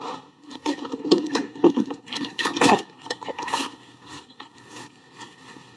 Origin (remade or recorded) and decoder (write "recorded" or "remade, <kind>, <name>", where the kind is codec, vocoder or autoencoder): remade, codec, SNAC